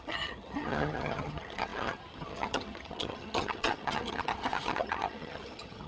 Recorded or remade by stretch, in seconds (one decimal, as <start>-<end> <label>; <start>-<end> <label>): 0.0-5.9 remade